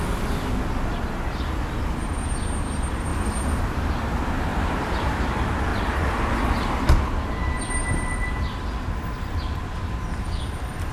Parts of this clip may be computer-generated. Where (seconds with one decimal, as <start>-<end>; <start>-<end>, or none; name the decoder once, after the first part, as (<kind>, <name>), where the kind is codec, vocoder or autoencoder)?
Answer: 3.1-3.6 (vocoder, BigVGAN v2); 4.5-5.2

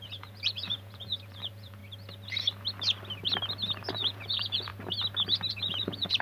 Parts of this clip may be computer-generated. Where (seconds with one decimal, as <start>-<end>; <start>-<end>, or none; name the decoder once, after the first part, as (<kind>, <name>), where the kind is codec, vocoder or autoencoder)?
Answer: 0.0-1.8 (vocoder, Vocos); 3.9-4.7; 5.5-6.2

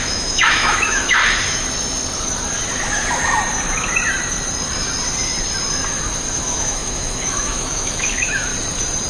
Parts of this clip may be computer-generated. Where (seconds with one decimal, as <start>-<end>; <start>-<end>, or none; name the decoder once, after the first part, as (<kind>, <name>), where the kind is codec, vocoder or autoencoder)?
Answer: 0.0-1.2 (autoencoder, DAC-VAE); 6.3-8.5

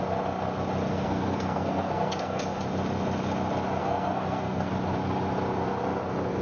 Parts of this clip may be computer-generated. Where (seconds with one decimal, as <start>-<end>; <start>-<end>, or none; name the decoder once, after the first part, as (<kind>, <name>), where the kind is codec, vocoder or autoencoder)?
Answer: 0.9-2.6 (codec, SNAC); 3.8-4.7

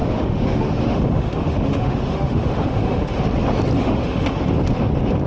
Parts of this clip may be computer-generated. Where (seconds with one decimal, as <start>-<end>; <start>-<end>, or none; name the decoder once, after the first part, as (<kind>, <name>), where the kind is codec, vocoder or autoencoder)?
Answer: 0.0-3.2 (autoencoder, DAC-VAE); 3.8-4.4

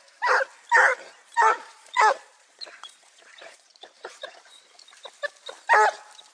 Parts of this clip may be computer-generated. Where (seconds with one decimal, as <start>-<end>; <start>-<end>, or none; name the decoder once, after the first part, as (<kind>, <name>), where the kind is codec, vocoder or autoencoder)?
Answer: 0.9-4.7 (vocoder, Vocos)

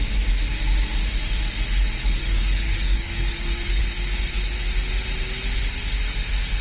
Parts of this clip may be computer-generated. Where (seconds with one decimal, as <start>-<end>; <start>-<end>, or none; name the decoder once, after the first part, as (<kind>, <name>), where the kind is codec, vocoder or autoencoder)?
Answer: 2.0-3.8 (codec, DAC)